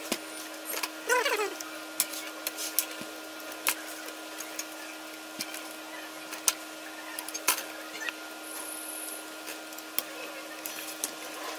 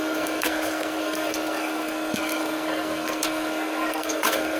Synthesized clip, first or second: second